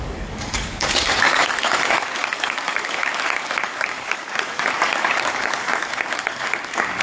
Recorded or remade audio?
remade